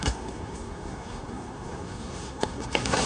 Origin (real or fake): fake